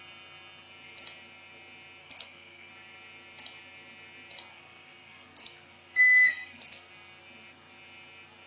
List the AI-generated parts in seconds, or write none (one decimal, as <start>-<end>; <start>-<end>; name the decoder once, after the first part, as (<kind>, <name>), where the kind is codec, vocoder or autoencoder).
2.0-2.7 (codec, SNAC); 4.5-6.9